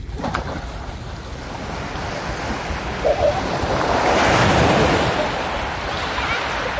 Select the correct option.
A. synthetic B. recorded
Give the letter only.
B